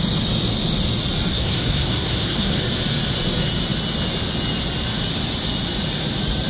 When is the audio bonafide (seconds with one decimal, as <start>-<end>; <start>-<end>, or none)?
0.0-1.3; 2.6-6.5

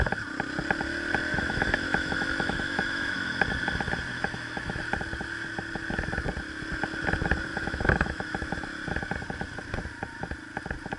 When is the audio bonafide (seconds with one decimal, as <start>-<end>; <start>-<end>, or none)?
0.0-1.3; 3.3-4.1; 4.8-7.5; 8.5-11.0

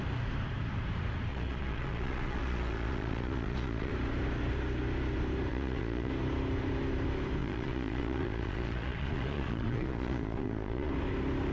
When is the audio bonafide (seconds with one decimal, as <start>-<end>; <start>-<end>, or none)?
0.0-1.3; 3.9-5.5; 6.1-7.4; 10.9-11.5

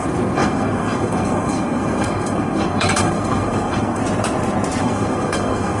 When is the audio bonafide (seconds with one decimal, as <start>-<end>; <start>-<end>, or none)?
4.0-4.8

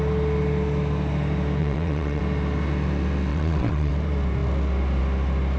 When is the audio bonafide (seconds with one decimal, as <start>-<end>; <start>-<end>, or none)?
0.0-1.6; 2.2-3.3; 3.9-5.6

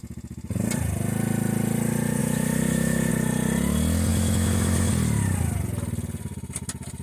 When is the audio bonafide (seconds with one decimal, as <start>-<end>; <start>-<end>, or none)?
0.0-2.2; 3.1-4.1; 4.9-7.0

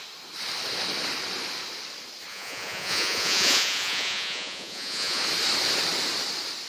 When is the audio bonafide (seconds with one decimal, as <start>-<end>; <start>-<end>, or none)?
0.0-2.3; 5.2-6.7

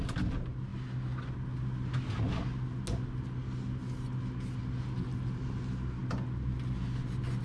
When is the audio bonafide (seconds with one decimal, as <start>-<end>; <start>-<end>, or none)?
0.0-7.4